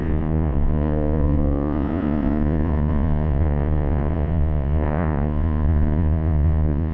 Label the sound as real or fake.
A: fake